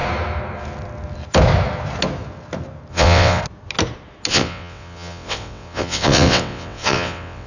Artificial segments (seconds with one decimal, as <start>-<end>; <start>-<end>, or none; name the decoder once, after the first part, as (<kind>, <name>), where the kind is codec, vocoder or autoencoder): 2.9-3.4 (vocoder, WaveNeXt); 4.3-7.5